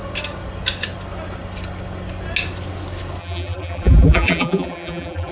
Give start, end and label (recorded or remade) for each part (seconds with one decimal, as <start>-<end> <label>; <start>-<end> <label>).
0.0-3.2 recorded; 3.2-5.3 remade